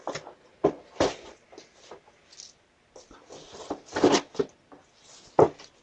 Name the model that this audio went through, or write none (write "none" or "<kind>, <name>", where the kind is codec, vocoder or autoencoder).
none